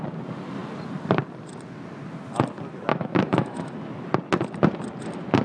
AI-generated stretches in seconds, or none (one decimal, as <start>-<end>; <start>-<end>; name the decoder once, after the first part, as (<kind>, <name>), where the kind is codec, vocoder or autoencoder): 2.9-3.7 (autoencoder, DAC-VAE)